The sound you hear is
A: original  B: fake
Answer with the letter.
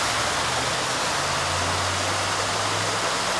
A